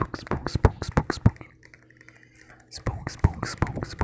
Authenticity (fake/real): real